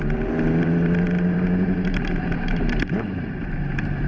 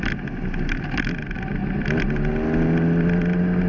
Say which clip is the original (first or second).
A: second